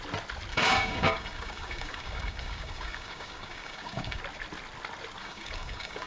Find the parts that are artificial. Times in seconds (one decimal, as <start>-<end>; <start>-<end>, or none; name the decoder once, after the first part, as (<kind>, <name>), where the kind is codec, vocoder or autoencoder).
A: 0.5-4.2 (codec, DAC); 5.2-6.1